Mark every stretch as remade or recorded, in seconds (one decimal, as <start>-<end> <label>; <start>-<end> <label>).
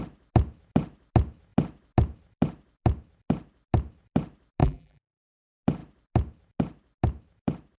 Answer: 0.0-4.6 recorded; 4.6-5.2 remade; 5.2-7.8 recorded